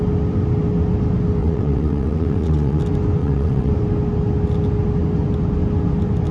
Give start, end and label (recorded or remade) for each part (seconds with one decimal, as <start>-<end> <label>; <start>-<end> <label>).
0.0-1.4 recorded; 1.4-2.8 remade; 2.8-3.2 recorded; 3.2-3.7 remade; 3.7-6.3 recorded